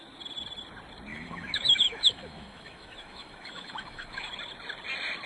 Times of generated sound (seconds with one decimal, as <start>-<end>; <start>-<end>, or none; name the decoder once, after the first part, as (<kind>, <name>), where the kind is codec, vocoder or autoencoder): 1.1-4.3 (autoencoder, DAC-VAE)